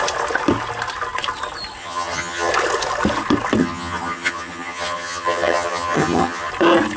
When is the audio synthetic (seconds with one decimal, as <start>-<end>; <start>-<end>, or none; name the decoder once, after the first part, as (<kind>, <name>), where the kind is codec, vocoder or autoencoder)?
1.8-2.5 (vocoder, HiFi-GAN); 3.6-6.5